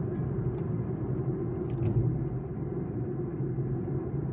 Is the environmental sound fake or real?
real